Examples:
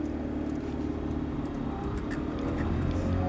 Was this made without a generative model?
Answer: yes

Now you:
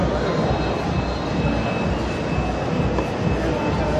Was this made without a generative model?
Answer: yes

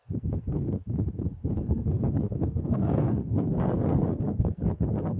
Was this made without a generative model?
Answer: no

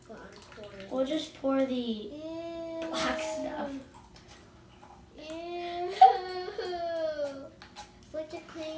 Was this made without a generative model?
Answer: yes